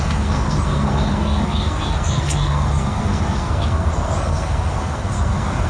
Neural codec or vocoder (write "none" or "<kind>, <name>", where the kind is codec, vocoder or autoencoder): codec, SNAC